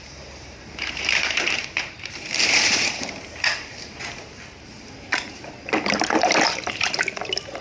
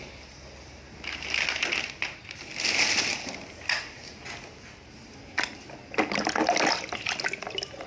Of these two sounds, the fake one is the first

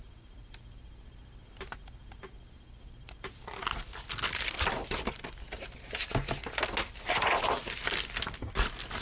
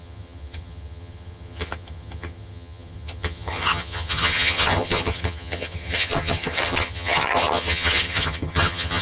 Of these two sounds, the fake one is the second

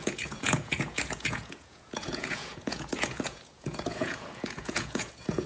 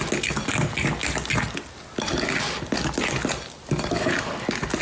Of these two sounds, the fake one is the first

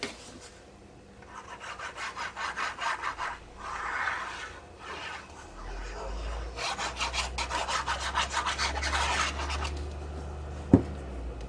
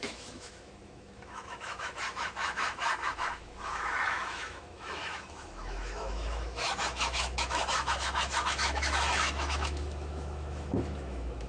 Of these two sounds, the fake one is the second